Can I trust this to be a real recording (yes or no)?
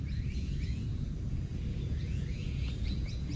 no